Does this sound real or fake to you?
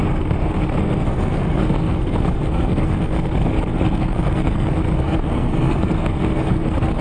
fake